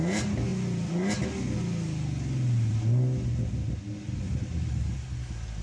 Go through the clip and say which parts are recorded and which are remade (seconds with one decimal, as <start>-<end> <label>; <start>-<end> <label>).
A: 0.0-5.6 recorded